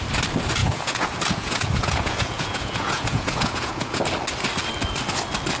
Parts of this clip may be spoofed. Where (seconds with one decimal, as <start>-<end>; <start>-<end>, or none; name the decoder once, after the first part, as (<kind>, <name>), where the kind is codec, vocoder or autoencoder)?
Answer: 0.6-4.0 (vocoder, Vocos)